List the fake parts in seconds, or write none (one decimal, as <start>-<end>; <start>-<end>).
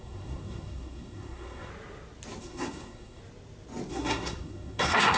0.0-1.7; 2.4-3.2; 3.9-5.2